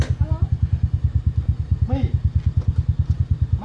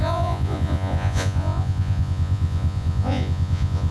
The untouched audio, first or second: first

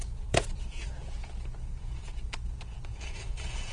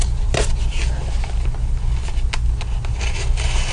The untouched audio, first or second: second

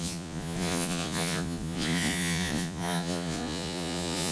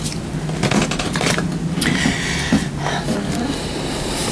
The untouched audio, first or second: second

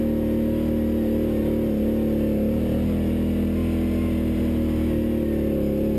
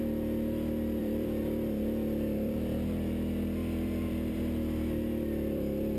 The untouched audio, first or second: first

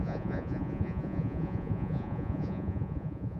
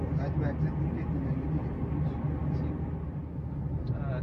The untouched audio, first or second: second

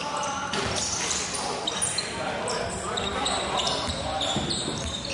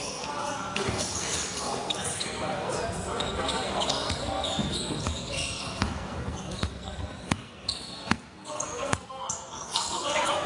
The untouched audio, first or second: first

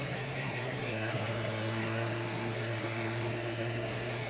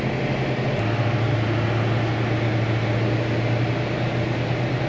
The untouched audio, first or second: second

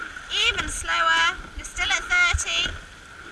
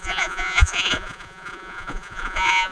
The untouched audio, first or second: first